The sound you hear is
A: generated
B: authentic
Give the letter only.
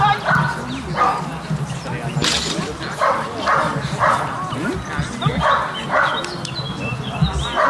B